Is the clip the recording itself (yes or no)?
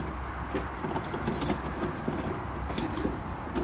yes